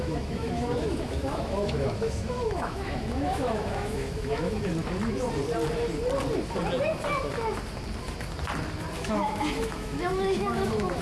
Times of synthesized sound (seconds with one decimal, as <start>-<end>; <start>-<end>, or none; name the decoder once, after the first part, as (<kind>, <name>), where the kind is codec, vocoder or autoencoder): 0.0-4.7 (autoencoder, DAC-VAE); 9.0-11.0